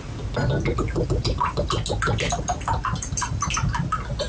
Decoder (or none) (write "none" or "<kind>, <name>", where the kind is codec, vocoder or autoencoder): none